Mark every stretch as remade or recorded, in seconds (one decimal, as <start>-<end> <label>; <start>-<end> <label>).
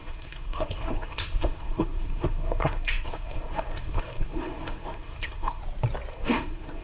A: 0.0-5.6 remade; 5.6-6.1 recorded; 6.1-6.8 remade